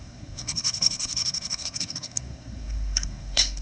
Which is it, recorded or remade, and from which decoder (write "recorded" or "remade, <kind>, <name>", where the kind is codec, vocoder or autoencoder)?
remade, codec, SNAC